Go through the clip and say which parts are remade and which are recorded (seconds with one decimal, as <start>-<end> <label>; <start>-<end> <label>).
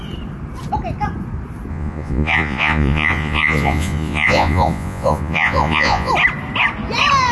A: 0.0-1.7 recorded; 1.7-6.1 remade; 6.1-7.3 recorded